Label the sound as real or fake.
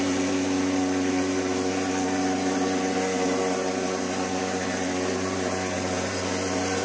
real